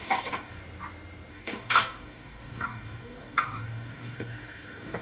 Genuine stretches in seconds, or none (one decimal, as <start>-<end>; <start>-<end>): 0.6-1.3

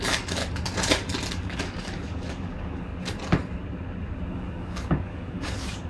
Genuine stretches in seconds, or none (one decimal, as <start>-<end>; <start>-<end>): 0.4-1.3; 2.9-4.3

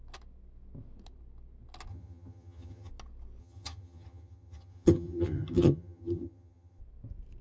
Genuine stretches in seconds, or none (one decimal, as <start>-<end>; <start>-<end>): 0.0-1.9; 2.9-3.4; 6.8-7.4

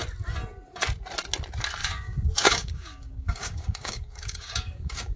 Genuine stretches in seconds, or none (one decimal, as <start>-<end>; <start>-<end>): 0.0-1.8

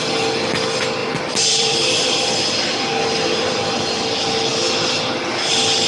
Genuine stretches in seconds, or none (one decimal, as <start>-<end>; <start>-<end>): 0.0-1.0; 4.0-5.9

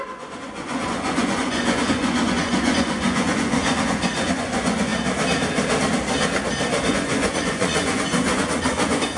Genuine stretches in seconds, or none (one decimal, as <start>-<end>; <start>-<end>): 4.9-6.9

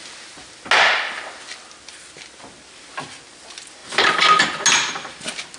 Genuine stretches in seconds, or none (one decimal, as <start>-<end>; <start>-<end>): 0.0-5.6